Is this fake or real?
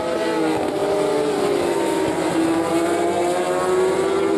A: real